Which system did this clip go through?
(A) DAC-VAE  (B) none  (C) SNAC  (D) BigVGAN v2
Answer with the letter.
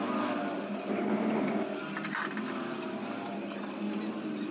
B